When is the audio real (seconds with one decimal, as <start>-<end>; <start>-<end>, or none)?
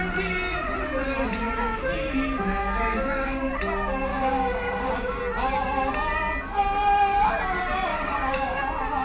0.0-2.6; 3.5-4.1; 5.2-7.9; 8.6-9.0